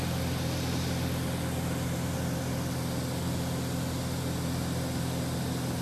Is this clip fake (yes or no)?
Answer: no